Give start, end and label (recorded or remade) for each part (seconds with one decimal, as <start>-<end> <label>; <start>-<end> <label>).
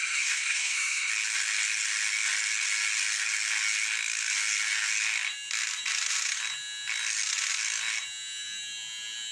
0.0-1.1 remade; 1.1-9.3 recorded